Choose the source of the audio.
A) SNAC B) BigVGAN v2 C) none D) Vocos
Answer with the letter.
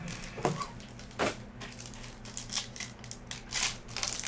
C